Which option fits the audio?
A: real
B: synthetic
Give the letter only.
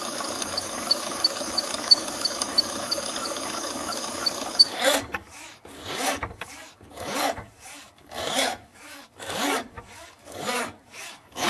B